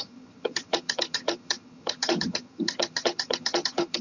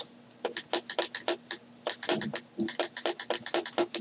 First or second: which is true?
second